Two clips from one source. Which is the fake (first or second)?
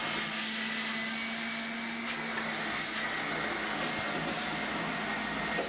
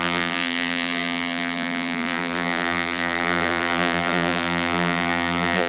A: second